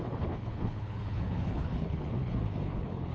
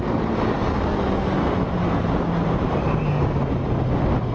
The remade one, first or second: first